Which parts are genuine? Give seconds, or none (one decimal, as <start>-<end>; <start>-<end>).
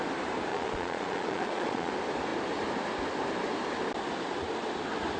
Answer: 0.0-0.5; 1.9-5.2